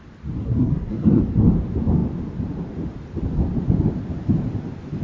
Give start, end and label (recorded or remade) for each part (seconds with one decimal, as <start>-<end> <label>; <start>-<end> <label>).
0.0-0.4 recorded; 0.4-1.2 remade; 1.2-5.0 recorded